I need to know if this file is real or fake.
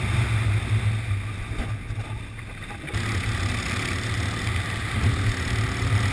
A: real